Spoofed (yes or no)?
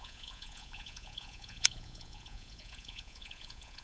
yes